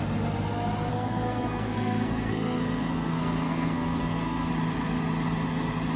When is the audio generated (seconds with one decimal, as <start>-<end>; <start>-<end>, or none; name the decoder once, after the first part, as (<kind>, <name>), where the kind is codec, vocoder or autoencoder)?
0.9-4.5 (codec, SNAC)